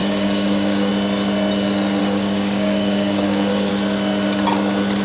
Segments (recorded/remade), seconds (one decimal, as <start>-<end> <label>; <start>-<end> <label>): 0.0-0.9 remade; 0.9-2.0 recorded; 2.0-3.7 remade; 3.7-5.0 recorded